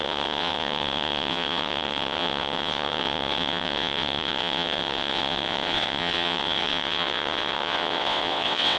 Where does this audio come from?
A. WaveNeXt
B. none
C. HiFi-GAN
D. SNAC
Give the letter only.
A